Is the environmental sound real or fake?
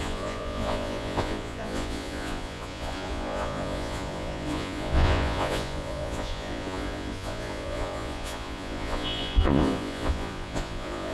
fake